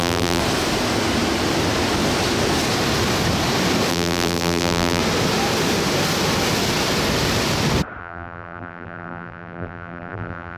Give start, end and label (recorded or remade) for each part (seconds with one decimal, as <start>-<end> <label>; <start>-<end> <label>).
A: 0.0-0.4 remade; 0.4-3.9 recorded; 3.9-5.0 remade; 5.0-8.0 recorded; 8.0-10.6 remade

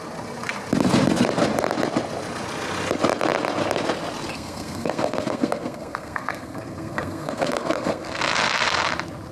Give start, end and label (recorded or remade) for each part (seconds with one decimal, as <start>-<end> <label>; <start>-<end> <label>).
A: 0.0-4.3 recorded; 4.3-8.2 remade; 8.2-9.3 recorded

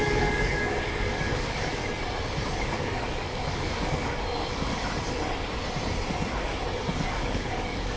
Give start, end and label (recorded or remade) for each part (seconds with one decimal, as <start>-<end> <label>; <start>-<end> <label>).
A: 0.0-1.8 remade; 1.8-2.6 recorded; 2.6-4.8 remade; 4.8-6.9 recorded; 6.9-8.0 remade

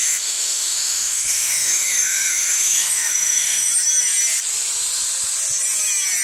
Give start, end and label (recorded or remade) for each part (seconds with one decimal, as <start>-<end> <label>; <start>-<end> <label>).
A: 0.0-3.7 remade; 3.7-6.2 recorded

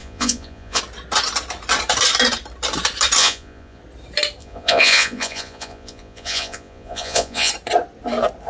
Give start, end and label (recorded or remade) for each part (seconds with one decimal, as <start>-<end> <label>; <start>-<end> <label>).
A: 0.0-0.8 remade; 0.8-3.2 recorded; 3.2-3.8 remade; 3.8-4.4 recorded; 4.4-7.5 remade; 7.5-8.5 recorded